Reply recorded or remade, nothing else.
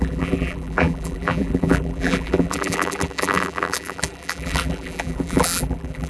remade